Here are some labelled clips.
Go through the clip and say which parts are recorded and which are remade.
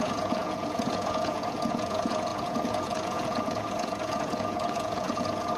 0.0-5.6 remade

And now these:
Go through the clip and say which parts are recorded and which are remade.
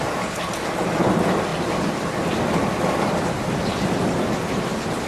0.0-5.1 recorded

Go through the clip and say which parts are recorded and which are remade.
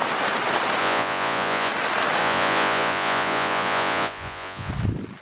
0.0-0.8 recorded; 0.8-1.7 remade; 1.7-2.2 recorded; 2.2-4.7 remade; 4.7-5.2 recorded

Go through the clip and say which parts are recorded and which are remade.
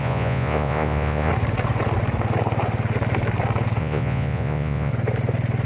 0.0-1.3 remade; 1.3-3.8 recorded; 3.8-4.9 remade; 4.9-5.7 recorded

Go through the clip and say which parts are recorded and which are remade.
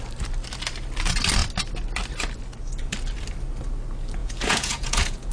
0.0-4.2 recorded; 4.2-5.3 remade